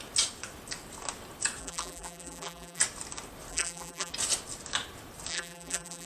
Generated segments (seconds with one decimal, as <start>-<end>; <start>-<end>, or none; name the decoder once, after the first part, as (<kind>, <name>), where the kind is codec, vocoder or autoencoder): 1.6-2.8 (vocoder, BigVGAN v2); 3.5-4.1; 5.3-6.1